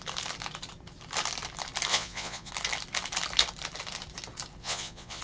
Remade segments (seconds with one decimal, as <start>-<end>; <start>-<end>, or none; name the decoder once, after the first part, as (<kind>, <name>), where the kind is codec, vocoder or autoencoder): 1.9-2.5 (vocoder, Vocos); 4.6-5.2